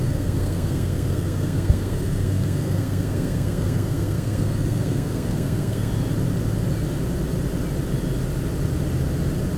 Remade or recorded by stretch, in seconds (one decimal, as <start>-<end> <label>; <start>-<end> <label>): 0.0-5.9 remade; 5.9-9.6 recorded

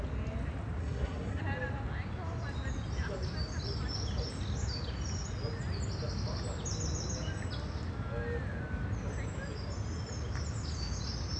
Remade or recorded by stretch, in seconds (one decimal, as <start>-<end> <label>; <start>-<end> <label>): 0.0-0.8 recorded; 0.8-1.4 remade; 1.4-11.4 recorded

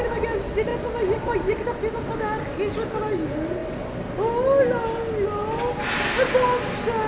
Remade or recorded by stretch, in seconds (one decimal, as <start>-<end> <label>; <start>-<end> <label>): 0.0-7.1 recorded

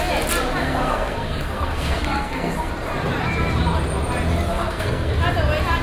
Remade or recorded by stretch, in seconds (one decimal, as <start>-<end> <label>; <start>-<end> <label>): 0.0-0.6 recorded; 0.6-2.7 remade; 2.7-4.5 recorded; 4.5-5.1 remade; 5.1-5.8 recorded